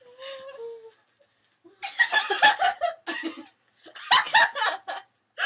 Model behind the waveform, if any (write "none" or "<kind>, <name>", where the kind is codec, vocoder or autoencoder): none